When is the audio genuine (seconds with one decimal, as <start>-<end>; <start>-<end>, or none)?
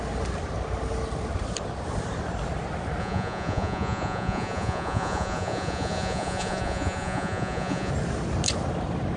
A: 0.0-3.0; 7.9-9.2